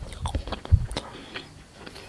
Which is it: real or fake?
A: real